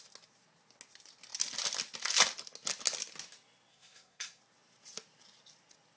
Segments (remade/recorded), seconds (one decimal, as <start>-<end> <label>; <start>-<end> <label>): 0.0-3.7 recorded; 3.7-4.4 remade; 4.4-6.0 recorded